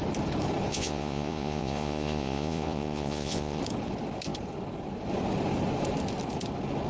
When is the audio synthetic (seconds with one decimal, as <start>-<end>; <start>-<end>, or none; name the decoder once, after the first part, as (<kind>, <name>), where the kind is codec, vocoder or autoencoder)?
0.7-3.6 (vocoder, Vocos)